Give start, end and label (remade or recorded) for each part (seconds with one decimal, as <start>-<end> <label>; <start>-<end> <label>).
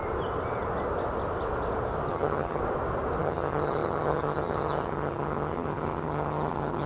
0.0-2.1 recorded; 2.1-2.6 remade; 2.6-3.2 recorded; 3.2-6.9 remade